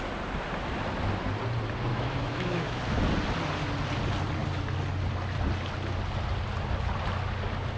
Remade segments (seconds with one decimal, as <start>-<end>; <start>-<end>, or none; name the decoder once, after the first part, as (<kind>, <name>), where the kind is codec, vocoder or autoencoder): 1.9-3.0 (autoencoder, DAC-VAE)